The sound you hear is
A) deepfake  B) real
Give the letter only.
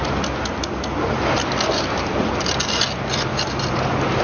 B